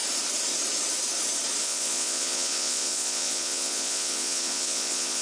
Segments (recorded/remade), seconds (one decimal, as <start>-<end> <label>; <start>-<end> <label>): 0.0-1.6 recorded; 1.6-5.2 remade